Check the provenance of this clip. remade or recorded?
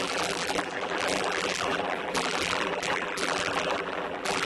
remade